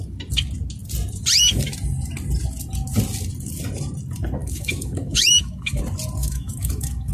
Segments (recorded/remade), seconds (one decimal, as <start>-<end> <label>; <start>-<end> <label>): 0.0-4.4 recorded; 4.4-5.8 remade; 5.8-6.2 recorded; 6.2-7.1 remade